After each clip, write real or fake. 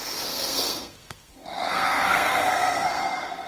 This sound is fake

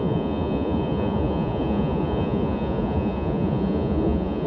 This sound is fake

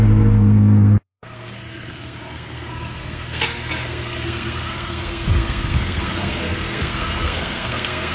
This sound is fake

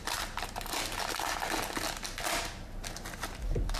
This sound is real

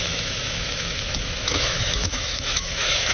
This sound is fake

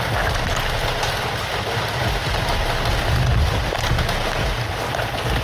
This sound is real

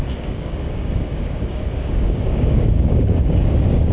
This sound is fake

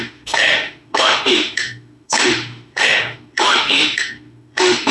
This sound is fake